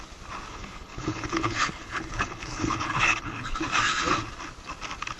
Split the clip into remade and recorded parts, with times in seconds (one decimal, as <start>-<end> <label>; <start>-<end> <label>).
0.0-0.5 recorded; 0.5-3.6 remade; 3.6-5.2 recorded